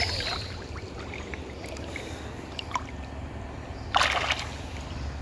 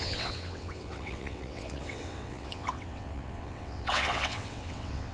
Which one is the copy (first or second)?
second